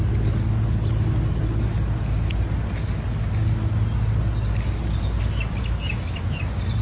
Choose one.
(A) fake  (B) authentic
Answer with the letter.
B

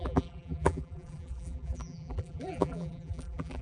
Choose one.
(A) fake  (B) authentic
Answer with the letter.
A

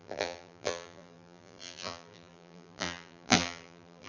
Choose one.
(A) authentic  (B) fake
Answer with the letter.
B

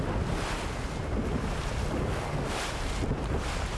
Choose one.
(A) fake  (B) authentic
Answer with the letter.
B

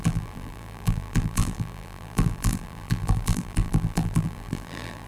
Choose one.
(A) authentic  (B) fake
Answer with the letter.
B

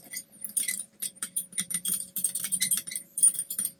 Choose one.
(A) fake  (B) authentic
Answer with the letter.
A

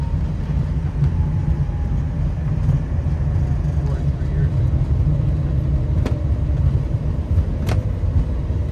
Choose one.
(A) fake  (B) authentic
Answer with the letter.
B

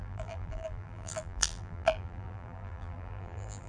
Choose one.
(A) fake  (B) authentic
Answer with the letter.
A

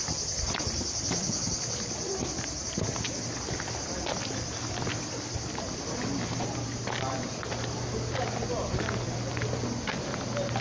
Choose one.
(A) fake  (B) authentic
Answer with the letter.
B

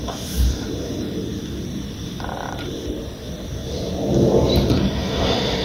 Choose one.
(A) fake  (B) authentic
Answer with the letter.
A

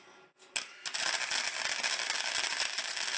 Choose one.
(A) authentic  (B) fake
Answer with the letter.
A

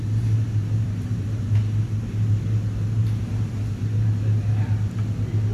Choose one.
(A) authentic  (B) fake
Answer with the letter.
A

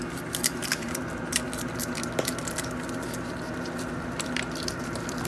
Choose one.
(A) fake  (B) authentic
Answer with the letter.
A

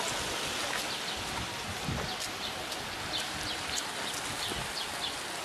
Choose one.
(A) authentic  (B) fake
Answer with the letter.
A